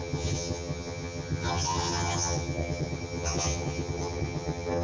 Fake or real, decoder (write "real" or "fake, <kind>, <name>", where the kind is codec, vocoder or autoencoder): fake, vocoder, HiFi-GAN